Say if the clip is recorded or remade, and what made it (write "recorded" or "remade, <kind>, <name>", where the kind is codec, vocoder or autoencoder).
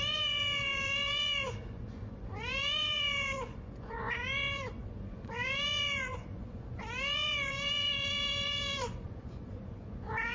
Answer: remade, vocoder, Vocos